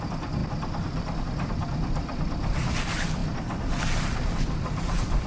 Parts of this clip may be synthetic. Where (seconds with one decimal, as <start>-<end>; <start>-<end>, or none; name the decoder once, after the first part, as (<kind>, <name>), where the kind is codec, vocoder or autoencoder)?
0.0-0.4 (vocoder, BigVGAN v2); 1.0-3.2; 3.8-5.3